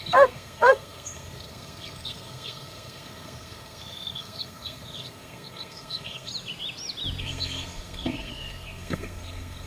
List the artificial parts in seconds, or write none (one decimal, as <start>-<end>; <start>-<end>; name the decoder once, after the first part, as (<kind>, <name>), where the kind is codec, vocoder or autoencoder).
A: 0.0-6.3 (codec, SNAC); 7.2-9.7